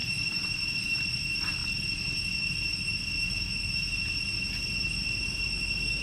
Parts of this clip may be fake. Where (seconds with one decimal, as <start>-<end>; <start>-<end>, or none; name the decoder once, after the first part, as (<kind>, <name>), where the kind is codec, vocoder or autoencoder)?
none